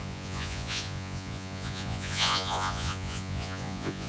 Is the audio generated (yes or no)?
yes